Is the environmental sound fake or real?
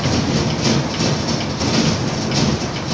real